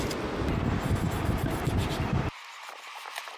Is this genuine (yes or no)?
yes